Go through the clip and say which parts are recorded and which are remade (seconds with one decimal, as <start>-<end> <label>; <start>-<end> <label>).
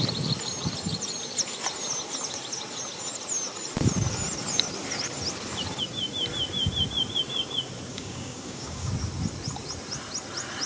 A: 0.0-7.9 recorded; 7.9-8.9 remade; 8.9-10.7 recorded